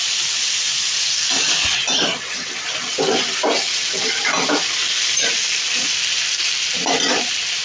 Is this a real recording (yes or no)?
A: yes